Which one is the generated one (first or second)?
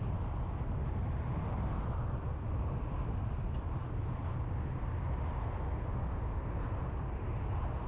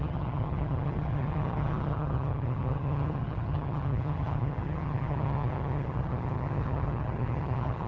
second